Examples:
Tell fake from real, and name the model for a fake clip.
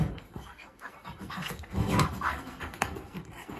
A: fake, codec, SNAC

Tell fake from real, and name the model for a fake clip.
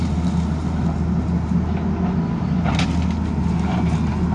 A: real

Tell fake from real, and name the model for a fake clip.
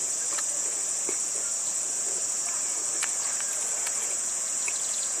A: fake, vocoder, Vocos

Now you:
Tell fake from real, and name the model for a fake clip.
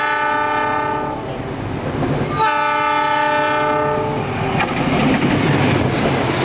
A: real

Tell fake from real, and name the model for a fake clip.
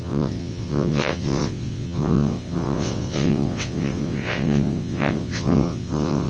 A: fake, vocoder, WaveNeXt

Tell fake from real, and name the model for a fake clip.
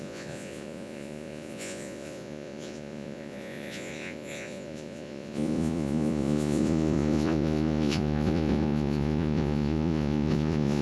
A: fake, vocoder, Vocos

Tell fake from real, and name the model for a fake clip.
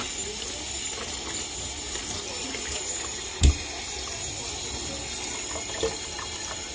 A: real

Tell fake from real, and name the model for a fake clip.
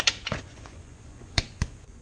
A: fake, vocoder, Vocos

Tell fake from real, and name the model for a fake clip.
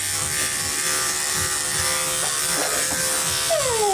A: real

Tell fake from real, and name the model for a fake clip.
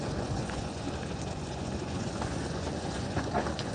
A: fake, vocoder, Vocos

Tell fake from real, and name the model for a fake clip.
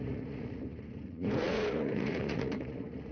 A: fake, vocoder, Vocos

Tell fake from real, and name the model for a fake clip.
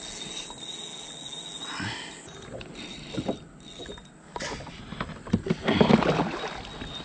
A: real